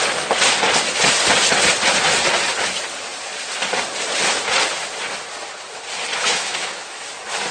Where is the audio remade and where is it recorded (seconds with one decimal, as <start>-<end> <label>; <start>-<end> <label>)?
0.0-6.1 recorded; 6.1-7.1 remade; 7.1-7.5 recorded